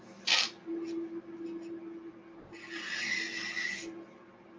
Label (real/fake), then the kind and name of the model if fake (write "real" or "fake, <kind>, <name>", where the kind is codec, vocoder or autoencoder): real